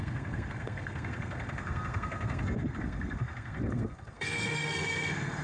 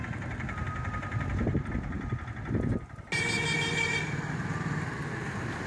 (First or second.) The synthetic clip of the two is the first